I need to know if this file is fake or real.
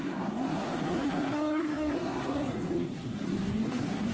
fake